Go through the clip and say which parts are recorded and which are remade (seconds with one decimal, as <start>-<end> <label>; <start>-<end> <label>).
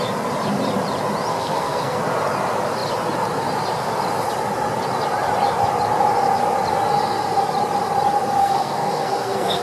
0.0-1.3 recorded; 1.3-2.0 remade; 2.0-8.4 recorded; 8.4-9.6 remade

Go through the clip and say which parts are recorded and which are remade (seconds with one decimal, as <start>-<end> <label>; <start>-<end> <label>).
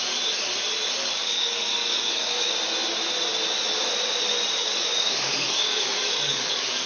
0.0-1.2 recorded; 1.2-2.5 remade; 2.5-4.6 recorded; 4.6-6.9 remade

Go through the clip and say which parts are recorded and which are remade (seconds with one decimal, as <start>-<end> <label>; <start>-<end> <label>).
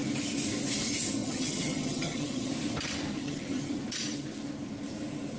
0.0-1.2 recorded; 1.2-2.5 remade; 2.5-3.2 recorded; 3.2-3.7 remade; 3.7-5.4 recorded